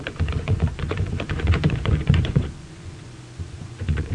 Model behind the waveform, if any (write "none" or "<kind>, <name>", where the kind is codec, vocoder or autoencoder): vocoder, Vocos